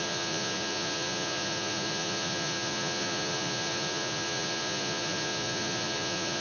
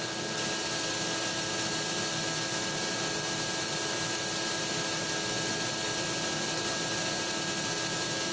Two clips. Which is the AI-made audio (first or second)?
first